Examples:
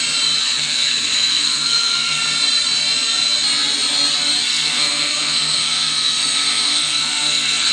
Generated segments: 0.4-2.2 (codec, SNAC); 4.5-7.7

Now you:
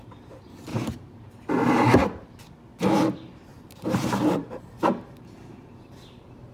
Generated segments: 0.7-1.3 (vocoder, BigVGAN v2); 3.5-5.7

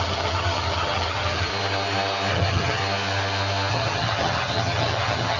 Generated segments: 0.0-1.5 (vocoder, HiFi-GAN); 2.3-2.8; 3.7-5.4